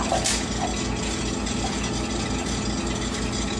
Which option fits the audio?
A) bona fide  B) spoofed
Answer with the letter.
A